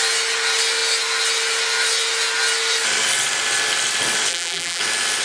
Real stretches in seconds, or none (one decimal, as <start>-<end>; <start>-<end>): 0.0-4.3; 4.8-5.2